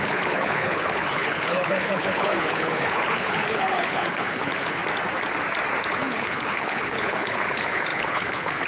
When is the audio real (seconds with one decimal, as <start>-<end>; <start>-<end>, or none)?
4.8-5.9